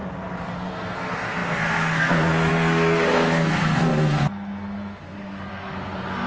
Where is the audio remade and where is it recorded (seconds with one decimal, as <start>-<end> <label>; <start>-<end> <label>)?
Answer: 0.0-0.7 recorded; 0.7-6.3 remade